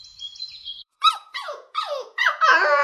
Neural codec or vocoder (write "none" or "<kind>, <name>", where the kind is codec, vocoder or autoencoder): vocoder, Vocos